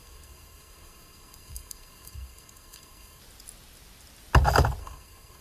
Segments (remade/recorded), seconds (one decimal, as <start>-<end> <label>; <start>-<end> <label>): 0.0-3.2 remade; 3.2-4.8 recorded; 4.8-5.4 remade